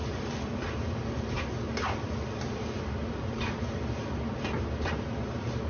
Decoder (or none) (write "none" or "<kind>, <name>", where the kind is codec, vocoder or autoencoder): none